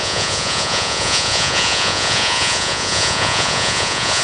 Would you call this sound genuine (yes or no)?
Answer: no